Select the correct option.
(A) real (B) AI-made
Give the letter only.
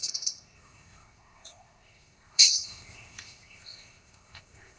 B